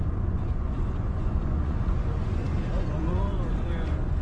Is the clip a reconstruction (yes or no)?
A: yes